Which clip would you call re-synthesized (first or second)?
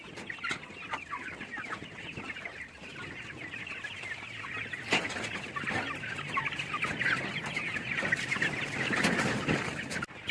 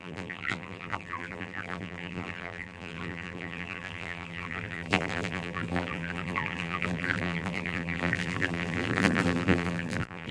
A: second